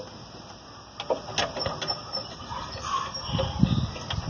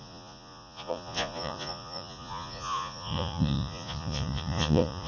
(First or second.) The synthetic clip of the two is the second